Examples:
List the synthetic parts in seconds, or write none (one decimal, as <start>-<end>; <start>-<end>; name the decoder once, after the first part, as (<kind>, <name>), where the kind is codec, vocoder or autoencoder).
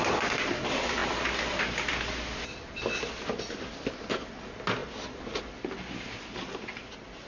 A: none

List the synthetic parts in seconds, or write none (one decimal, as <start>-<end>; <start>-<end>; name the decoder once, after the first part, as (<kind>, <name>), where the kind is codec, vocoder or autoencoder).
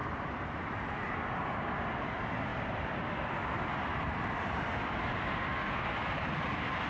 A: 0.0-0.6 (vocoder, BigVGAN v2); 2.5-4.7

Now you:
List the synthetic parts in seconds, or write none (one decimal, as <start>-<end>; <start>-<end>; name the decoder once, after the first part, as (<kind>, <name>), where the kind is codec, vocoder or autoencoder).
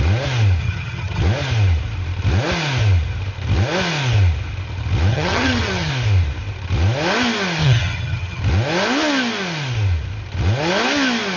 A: 0.6-1.2 (vocoder, HiFi-GAN); 5.1-5.9; 7.6-8.4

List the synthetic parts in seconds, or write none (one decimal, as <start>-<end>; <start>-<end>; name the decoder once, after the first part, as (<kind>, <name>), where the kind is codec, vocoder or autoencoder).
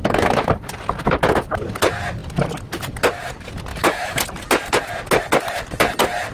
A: 0.0-0.5 (autoencoder, DAC-VAE); 3.7-4.2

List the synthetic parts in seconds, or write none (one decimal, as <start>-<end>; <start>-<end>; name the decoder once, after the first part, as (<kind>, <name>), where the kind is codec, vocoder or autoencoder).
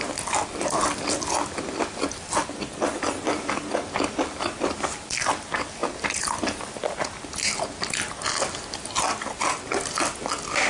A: none